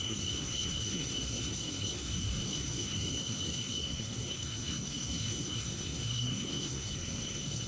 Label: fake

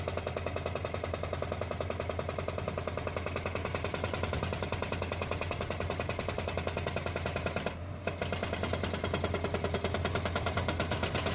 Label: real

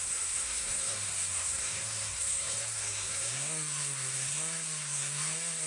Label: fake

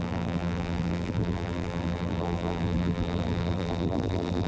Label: fake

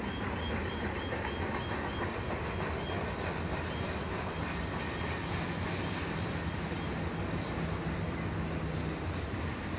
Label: real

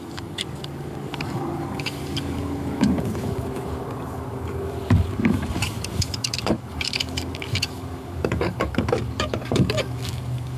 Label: fake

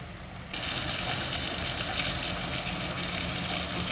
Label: real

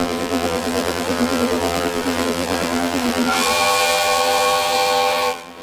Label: fake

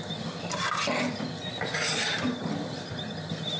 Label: real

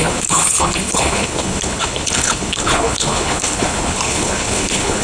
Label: fake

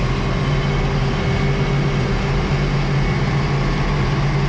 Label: real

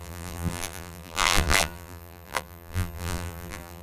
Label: fake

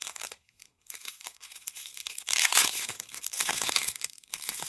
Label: fake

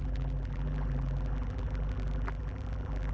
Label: fake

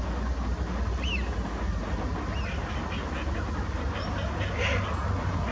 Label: real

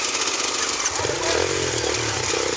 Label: real